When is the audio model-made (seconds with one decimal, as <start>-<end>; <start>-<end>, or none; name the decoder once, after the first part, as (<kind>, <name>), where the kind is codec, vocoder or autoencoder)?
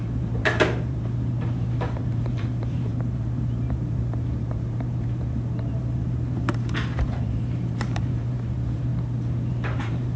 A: 0.0-8.9 (vocoder, BigVGAN v2); 9.5-10.2